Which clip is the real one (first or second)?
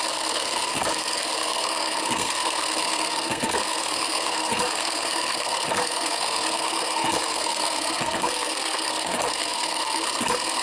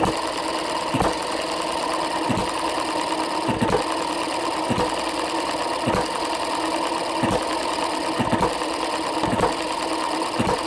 second